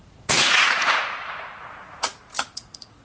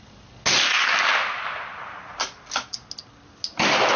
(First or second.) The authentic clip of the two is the second